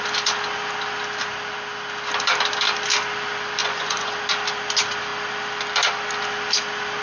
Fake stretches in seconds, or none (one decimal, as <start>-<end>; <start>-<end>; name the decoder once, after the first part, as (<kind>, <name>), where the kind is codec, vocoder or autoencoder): 3.6-4.1 (vocoder, Vocos)